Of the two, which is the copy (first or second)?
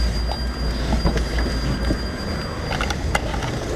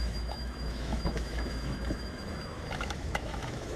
second